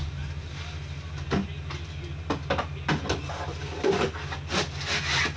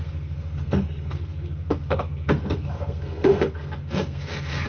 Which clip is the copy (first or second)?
second